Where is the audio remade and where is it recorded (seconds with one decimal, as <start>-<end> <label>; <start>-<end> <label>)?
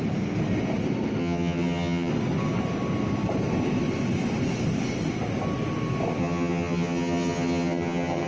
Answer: 0.0-1.2 recorded; 1.2-2.1 remade; 2.1-6.2 recorded; 6.2-8.3 remade